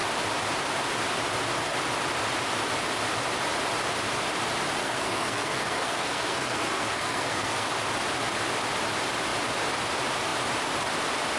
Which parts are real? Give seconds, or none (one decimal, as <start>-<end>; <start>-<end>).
0.0-4.8; 7.7-11.4